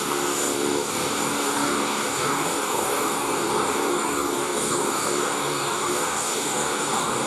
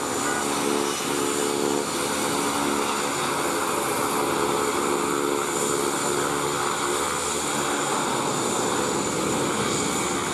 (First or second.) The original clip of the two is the second